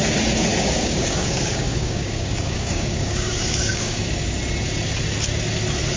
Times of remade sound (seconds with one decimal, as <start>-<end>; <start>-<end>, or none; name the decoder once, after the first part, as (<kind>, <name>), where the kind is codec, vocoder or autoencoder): 0.5-4.0 (codec, DAC)